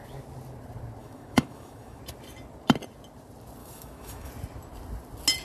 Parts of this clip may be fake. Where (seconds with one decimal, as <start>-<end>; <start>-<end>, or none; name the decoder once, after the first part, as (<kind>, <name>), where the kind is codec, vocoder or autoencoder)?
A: 1.0-2.0 (autoencoder, DAC-VAE); 3.6-4.3